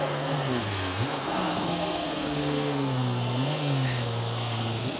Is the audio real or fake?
fake